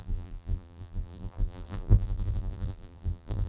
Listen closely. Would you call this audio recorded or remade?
remade